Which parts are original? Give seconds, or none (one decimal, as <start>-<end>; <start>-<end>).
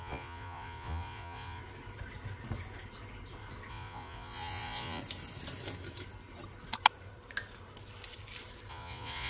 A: 1.6-3.7; 5.0-8.7